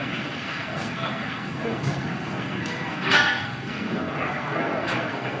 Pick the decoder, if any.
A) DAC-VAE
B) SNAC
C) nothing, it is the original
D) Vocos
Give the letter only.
B